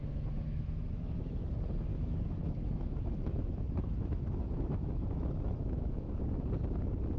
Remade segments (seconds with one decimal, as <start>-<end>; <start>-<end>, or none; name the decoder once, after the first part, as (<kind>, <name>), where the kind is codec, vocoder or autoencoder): 0.0-1.3 (autoencoder, DAC-VAE); 1.9-6.2